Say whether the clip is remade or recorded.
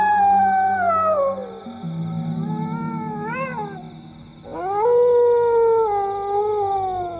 recorded